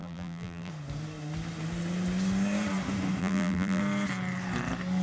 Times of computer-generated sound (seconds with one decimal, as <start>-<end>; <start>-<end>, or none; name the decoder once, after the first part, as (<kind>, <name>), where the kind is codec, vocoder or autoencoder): 0.0-0.7 (vocoder, BigVGAN v2); 3.2-3.8